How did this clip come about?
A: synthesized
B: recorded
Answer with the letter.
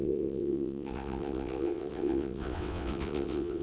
A